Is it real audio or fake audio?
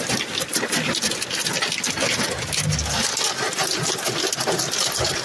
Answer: real